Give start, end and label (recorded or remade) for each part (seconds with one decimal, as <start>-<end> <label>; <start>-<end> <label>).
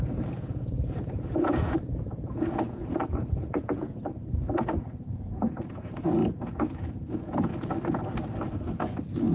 0.0-7.5 remade; 7.5-9.3 recorded